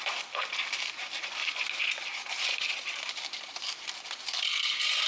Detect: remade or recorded recorded